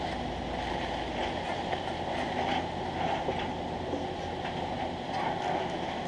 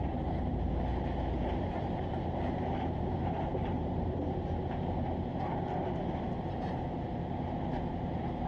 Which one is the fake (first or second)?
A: second